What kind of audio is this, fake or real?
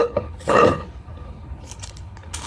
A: fake